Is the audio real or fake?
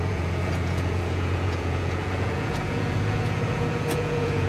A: fake